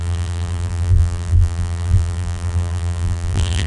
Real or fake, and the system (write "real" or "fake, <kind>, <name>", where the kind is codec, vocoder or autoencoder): fake, vocoder, BigVGAN v2